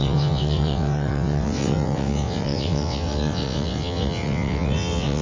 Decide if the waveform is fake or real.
fake